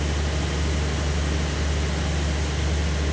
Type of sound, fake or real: real